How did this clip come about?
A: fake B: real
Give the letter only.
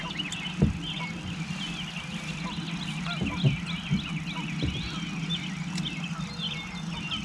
B